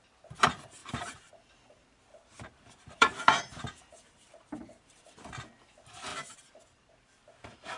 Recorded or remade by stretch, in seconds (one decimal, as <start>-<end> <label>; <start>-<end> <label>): 0.0-0.8 recorded; 0.8-1.3 remade; 1.3-2.1 recorded; 2.1-5.1 remade; 5.1-6.1 recorded; 6.1-6.9 remade; 6.9-7.8 recorded